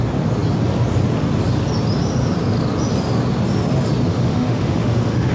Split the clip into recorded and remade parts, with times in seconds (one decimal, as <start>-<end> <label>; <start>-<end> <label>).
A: 0.0-4.1 recorded; 4.1-5.3 remade